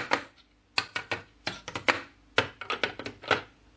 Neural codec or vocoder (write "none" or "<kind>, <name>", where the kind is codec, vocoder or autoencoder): none